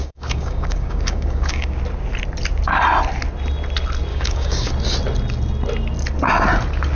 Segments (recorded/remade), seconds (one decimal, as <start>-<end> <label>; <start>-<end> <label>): 0.0-1.8 remade; 1.8-4.1 recorded; 4.1-4.7 remade; 4.7-7.0 recorded